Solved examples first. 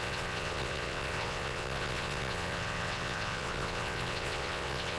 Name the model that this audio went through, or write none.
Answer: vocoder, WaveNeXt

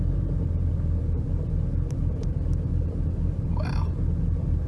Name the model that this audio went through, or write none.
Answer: none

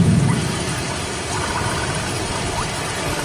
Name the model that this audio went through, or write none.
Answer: none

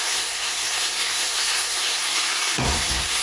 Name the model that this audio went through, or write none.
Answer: codec, SNAC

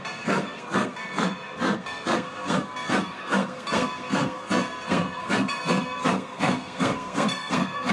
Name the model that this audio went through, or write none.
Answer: codec, SNAC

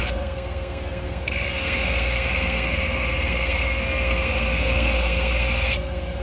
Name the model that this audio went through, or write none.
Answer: codec, SNAC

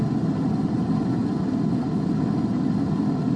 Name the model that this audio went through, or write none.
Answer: none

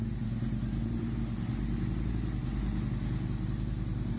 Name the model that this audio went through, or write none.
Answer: none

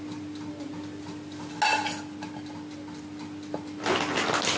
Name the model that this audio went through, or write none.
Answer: none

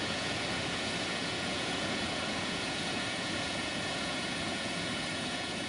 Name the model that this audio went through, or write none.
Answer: vocoder, Vocos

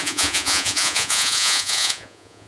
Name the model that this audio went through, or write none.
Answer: vocoder, Vocos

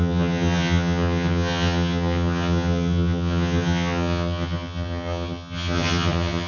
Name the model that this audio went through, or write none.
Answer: vocoder, HiFi-GAN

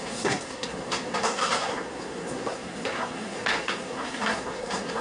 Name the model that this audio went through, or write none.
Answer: codec, SNAC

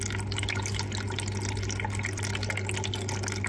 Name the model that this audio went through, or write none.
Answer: none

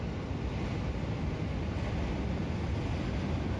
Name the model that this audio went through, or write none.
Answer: none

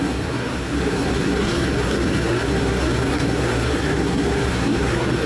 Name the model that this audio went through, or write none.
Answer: codec, SNAC